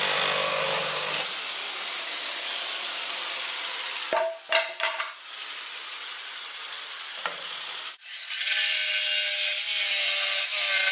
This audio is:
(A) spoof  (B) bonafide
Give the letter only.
B